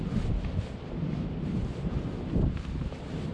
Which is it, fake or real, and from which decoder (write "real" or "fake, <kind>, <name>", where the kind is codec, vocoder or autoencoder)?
fake, vocoder, BigVGAN v2